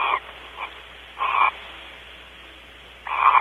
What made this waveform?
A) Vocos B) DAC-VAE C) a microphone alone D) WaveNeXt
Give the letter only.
C